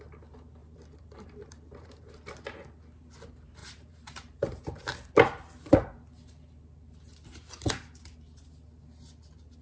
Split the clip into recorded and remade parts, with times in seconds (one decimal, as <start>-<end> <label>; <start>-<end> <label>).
0.0-0.6 recorded; 0.6-2.0 remade; 2.0-3.6 recorded; 3.6-4.6 remade; 4.6-9.6 recorded